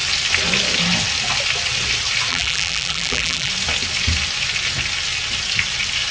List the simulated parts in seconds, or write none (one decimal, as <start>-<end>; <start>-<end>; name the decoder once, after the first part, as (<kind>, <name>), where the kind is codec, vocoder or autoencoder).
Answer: 2.3-3.5 (vocoder, BigVGAN v2)